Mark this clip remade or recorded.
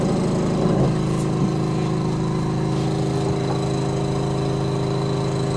recorded